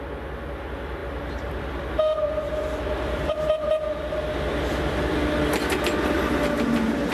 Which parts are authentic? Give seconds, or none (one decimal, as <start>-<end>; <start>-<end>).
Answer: 0.0-7.1